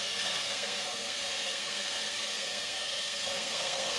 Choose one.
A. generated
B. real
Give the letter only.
A